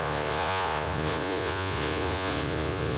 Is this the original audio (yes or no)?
no